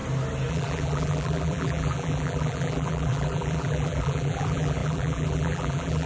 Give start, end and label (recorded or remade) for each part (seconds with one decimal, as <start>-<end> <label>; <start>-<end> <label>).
0.0-0.5 recorded; 0.5-6.1 remade

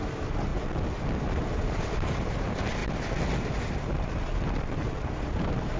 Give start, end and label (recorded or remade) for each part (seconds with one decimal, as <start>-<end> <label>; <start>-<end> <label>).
0.0-0.5 remade; 0.5-1.2 recorded; 1.2-2.8 remade; 2.8-3.7 recorded; 3.7-5.8 remade

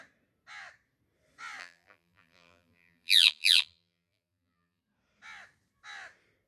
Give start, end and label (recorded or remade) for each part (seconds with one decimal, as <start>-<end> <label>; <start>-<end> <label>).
0.0-1.6 recorded; 1.6-4.8 remade; 4.8-6.5 recorded